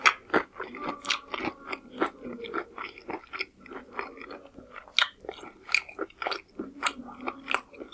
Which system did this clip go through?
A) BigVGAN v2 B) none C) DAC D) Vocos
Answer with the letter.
B